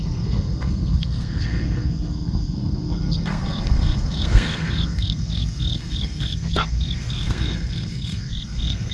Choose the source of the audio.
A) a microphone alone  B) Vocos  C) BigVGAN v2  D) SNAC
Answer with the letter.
D